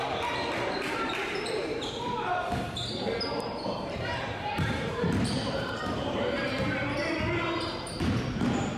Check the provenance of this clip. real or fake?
fake